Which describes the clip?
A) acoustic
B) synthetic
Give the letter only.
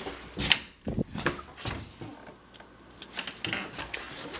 A